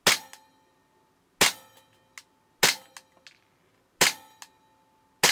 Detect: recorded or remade recorded